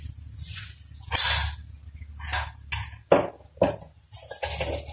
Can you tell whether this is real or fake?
real